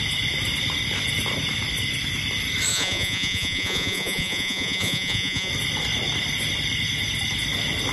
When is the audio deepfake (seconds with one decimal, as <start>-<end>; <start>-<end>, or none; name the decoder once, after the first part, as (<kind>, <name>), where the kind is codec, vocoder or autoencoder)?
2.7-5.5 (vocoder, Vocos)